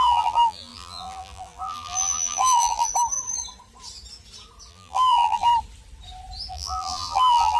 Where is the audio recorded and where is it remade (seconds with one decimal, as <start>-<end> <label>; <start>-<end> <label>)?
0.0-2.9 remade; 2.9-4.7 recorded; 4.7-5.5 remade; 5.5-6.5 recorded; 6.5-7.6 remade